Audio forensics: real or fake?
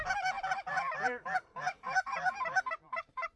fake